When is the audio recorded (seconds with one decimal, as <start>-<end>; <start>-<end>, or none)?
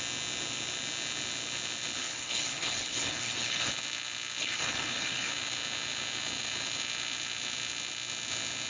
0.0-2.0; 3.7-4.4; 5.3-8.7